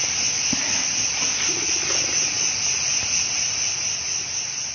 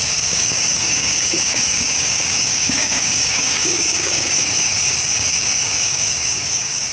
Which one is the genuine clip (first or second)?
first